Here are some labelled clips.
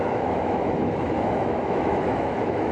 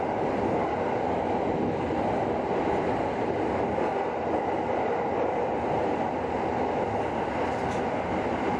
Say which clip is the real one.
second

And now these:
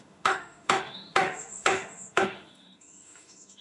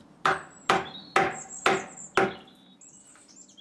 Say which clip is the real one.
second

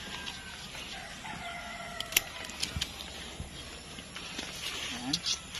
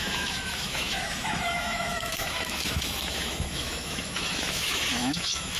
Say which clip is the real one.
first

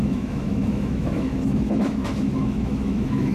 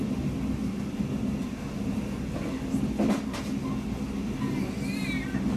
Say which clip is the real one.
second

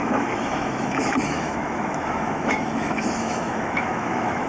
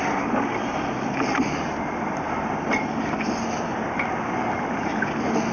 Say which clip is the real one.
second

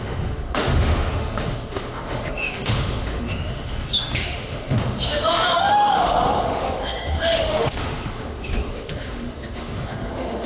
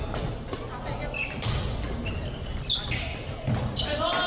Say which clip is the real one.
second